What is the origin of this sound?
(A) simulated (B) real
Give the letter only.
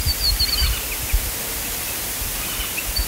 B